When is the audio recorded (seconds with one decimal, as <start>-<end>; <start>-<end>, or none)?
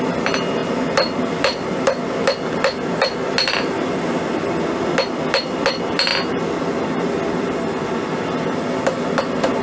0.0-9.6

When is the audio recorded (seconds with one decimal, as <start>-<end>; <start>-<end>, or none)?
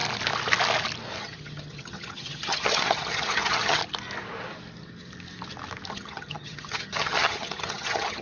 0.0-1.2; 3.8-5.9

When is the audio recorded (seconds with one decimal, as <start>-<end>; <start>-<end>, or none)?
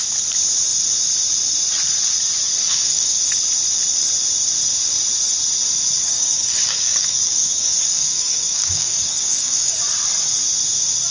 0.0-2.6; 3.2-6.0; 9.8-11.1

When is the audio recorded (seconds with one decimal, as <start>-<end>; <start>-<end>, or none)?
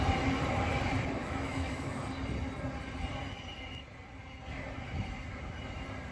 0.0-1.2; 1.9-6.1